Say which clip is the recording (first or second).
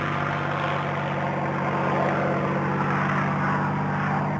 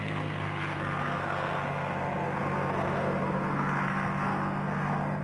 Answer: first